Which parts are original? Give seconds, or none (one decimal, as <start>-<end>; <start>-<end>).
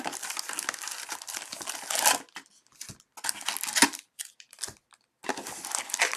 0.0-3.8; 4.6-6.2